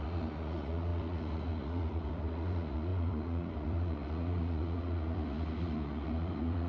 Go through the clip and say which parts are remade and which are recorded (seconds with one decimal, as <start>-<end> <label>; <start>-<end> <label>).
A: 0.0-6.7 remade